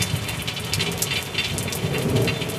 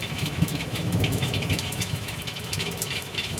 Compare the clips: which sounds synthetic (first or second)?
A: second